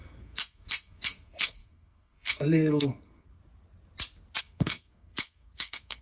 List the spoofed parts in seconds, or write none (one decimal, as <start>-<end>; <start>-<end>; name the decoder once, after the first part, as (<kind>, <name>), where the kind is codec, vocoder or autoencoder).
0.0-3.4 (codec, SNAC); 4.4-6.0